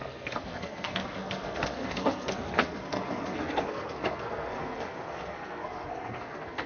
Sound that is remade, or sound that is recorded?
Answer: remade